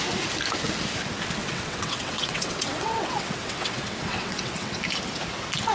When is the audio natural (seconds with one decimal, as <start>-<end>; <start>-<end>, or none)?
0.0-1.4; 4.8-5.7